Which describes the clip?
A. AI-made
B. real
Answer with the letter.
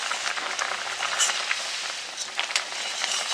B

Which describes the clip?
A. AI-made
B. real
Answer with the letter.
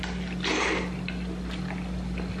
B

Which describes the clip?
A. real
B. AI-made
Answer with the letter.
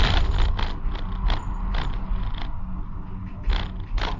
A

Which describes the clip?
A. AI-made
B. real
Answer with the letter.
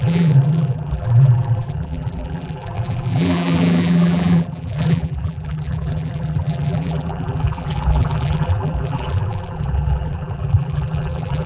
A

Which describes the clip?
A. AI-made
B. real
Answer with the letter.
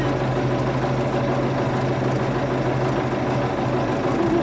B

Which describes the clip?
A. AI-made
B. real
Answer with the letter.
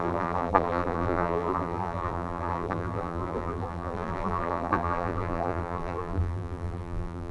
A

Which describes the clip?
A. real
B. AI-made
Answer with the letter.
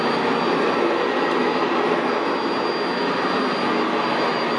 A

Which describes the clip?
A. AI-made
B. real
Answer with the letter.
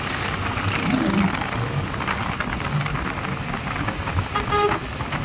B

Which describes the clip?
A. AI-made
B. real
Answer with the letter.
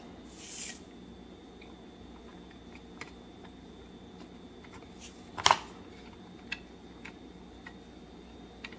B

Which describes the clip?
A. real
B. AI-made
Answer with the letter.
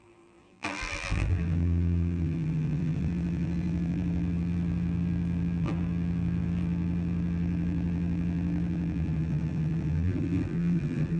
B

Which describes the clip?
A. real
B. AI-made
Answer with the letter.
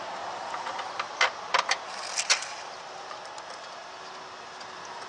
A